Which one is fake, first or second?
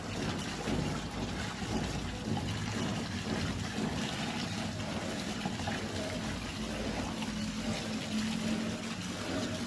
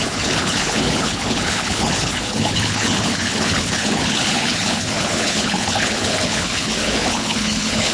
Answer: second